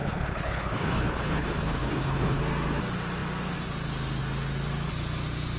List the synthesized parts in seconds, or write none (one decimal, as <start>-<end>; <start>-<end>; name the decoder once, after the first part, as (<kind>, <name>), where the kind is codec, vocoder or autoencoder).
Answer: 0.0-2.4 (codec, HILCodec)